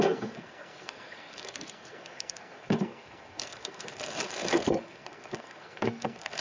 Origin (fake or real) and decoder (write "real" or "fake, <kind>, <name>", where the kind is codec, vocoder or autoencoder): fake, codec, SNAC